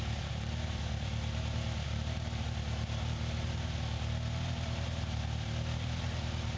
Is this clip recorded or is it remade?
remade